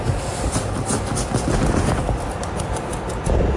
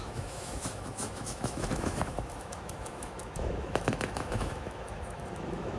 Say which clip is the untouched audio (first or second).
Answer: first